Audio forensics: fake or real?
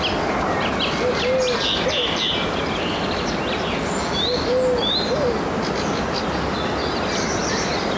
real